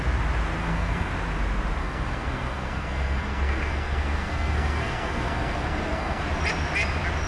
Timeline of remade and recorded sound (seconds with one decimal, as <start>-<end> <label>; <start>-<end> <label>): 0.0-0.6 recorded; 0.6-1.1 remade; 1.1-1.8 recorded; 1.8-6.2 remade; 6.2-7.3 recorded